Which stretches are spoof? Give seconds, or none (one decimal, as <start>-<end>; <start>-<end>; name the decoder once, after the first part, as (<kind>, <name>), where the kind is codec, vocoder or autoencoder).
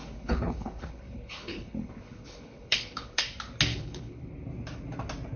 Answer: 0.0-3.2 (codec, HILCodec); 3.7-4.3